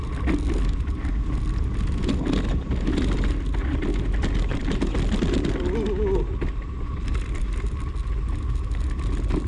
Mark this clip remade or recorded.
recorded